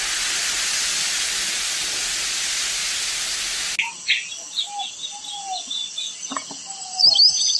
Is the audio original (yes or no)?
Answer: yes